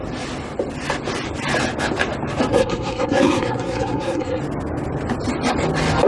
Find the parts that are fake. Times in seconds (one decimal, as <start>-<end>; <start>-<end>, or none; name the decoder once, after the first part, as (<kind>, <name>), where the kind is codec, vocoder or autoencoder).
2.5-4.4 (codec, SNAC)

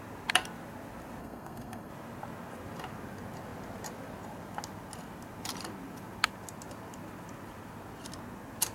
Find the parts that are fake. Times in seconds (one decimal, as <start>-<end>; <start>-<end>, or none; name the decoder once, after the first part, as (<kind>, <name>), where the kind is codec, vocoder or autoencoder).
1.2-1.9 (codec, SNAC)

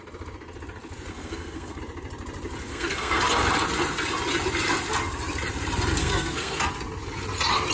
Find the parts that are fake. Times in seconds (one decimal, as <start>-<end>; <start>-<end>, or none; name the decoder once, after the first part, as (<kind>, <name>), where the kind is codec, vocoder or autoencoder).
1.1-1.8 (codec, SNAC); 2.7-3.2; 6.0-6.7

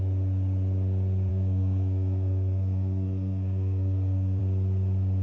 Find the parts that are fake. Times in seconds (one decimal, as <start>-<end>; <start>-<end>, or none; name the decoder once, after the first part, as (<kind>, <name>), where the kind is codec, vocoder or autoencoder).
1.3-4.4 (codec, SNAC)

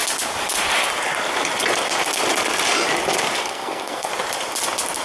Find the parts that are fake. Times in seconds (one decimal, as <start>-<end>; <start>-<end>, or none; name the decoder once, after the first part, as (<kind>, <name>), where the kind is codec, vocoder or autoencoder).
3.4-4.1 (codec, SNAC)